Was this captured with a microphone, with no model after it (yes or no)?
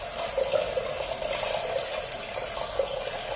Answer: yes